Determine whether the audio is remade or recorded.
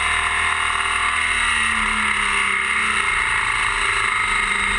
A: recorded